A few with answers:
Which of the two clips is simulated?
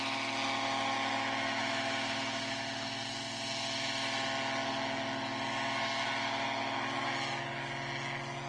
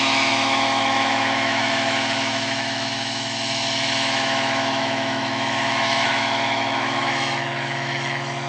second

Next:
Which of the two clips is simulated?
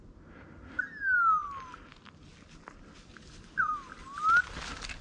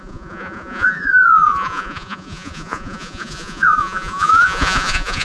second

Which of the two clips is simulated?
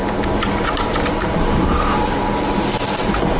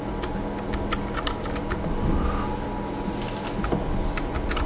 first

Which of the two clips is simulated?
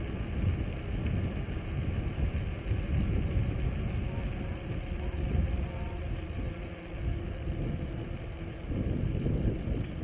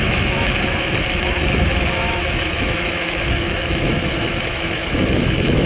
second